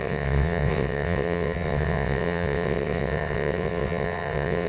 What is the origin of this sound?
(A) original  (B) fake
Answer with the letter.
B